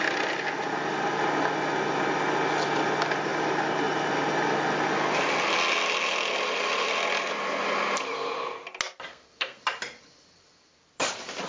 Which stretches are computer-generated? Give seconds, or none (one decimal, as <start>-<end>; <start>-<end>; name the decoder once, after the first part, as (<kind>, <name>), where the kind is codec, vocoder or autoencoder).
9.1-9.6 (codec, SNAC)